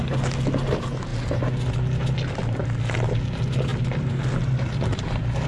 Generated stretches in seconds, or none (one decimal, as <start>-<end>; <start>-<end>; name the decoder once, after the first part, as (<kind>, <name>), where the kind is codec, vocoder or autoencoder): 3.7-5.5 (vocoder, BigVGAN v2)